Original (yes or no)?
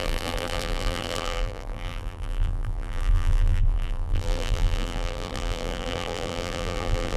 no